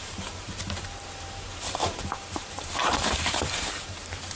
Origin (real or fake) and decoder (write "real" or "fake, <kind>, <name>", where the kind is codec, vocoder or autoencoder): fake, vocoder, BigVGAN v2